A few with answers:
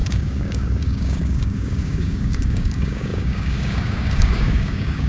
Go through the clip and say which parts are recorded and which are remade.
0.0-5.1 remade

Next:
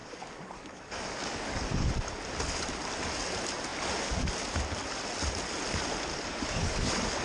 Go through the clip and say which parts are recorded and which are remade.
0.0-1.9 remade; 1.9-6.1 recorded; 6.1-7.2 remade

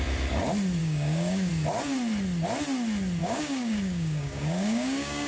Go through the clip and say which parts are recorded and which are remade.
0.0-0.8 recorded; 0.8-1.5 remade; 1.5-3.2 recorded; 3.2-5.3 remade

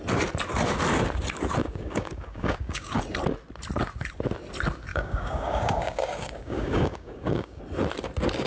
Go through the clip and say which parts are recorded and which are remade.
0.0-1.6 recorded; 1.6-3.0 remade; 3.0-4.9 recorded; 4.9-7.6 remade; 7.6-8.5 recorded

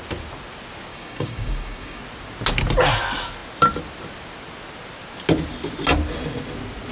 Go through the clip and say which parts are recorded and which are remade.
0.0-0.9 recorded; 0.9-2.0 remade; 2.0-6.9 recorded

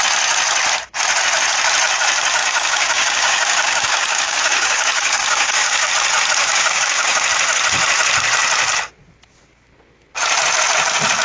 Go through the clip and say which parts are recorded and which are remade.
0.0-2.4 recorded; 2.4-5.9 remade; 5.9-6.4 recorded; 6.4-7.3 remade; 7.3-11.2 recorded

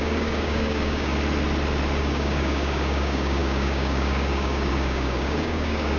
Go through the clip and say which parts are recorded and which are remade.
0.0-1.1 remade; 1.1-2.0 recorded; 2.0-6.0 remade

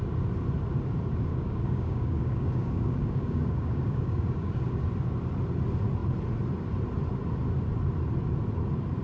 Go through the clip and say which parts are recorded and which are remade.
0.0-1.3 recorded; 1.3-4.6 remade; 4.6-9.0 recorded